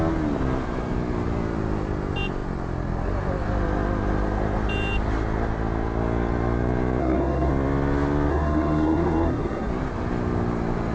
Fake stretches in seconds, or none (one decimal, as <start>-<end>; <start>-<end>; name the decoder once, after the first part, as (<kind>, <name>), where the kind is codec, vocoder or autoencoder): 7.0-7.5 (codec, SNAC); 8.3-9.7

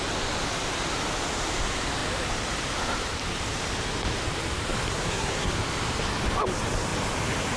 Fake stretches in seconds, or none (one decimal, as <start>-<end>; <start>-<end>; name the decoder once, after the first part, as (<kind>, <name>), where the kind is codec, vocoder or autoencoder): 4.9-5.5 (codec, SNAC)

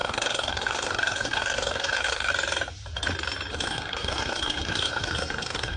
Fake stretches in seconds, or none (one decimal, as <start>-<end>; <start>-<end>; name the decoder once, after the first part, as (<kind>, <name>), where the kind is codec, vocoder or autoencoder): 0.0-2.3 (codec, SNAC); 3.5-5.8